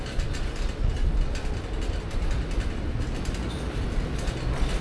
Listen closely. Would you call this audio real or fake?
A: real